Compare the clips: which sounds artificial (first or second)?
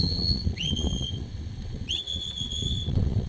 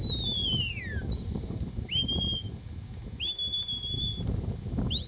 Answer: first